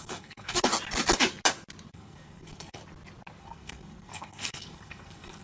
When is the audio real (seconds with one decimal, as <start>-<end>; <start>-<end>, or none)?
0.7-1.9; 2.8-3.4